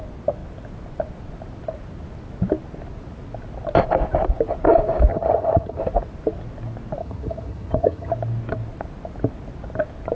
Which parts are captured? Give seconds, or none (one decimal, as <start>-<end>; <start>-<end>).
0.0-5.1; 5.8-7.0; 8.1-10.1